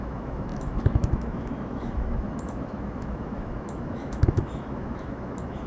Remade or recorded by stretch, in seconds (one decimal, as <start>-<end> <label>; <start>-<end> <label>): 0.0-5.7 remade